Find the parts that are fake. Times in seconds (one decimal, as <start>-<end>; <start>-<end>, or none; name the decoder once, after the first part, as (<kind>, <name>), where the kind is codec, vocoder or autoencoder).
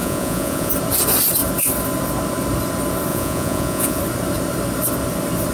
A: 0.0-0.7 (vocoder, Vocos); 3.1-4.0